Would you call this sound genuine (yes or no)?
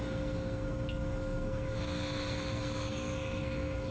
no